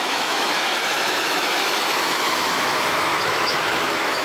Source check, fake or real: fake